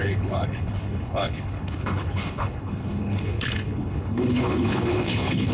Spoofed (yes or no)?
yes